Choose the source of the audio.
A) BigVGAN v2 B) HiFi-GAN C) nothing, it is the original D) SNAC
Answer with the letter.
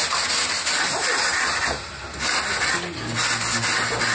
C